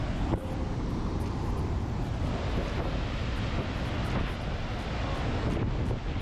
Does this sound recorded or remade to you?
recorded